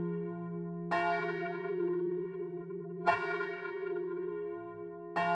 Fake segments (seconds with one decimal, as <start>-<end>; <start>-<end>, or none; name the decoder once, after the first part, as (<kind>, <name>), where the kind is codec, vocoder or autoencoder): 1.2-4.3 (vocoder, Vocos)